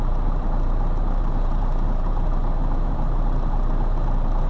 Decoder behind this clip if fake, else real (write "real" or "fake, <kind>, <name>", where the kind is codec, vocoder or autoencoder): fake, vocoder, BigVGAN v2